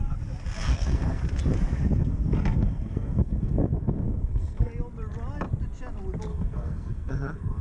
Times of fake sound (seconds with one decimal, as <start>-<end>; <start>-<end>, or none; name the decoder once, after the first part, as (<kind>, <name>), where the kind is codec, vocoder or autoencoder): 0.7-1.2 (codec, SNAC); 2.0-4.7; 6.3-7.6